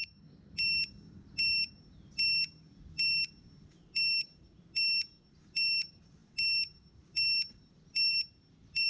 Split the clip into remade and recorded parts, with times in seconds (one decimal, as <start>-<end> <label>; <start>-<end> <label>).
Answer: 0.0-8.9 recorded